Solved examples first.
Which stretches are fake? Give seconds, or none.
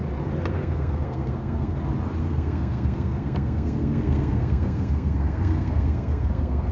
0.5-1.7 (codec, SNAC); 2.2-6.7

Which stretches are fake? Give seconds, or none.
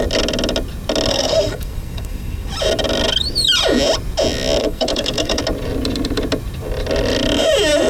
1.1-2.5 (codec, SNAC); 4.6-5.4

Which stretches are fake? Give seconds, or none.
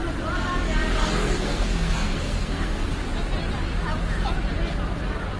1.0-2.9 (codec, SNAC)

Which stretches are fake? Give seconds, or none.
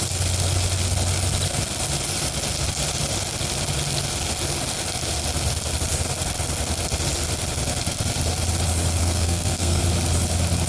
9.0-9.8 (codec, SNAC)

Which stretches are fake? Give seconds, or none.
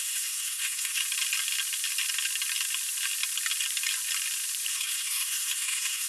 0.0-1.0 (codec, SNAC); 4.7-6.1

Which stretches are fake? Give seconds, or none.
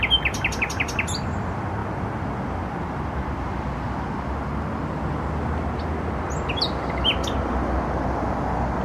none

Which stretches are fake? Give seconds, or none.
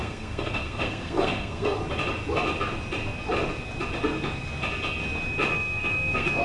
0.0-1.8 (codec, SNAC); 5.5-6.4